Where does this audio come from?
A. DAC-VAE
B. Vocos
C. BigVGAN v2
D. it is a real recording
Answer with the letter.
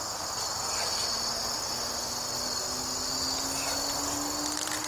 D